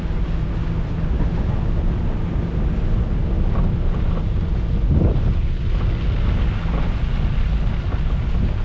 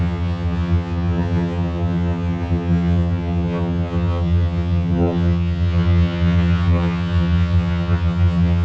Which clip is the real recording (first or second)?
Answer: first